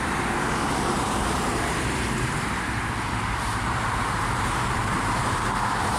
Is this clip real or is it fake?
fake